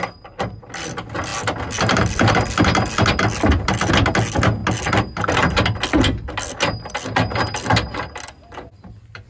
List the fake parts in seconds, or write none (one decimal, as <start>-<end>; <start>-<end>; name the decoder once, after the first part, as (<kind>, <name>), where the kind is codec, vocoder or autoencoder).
none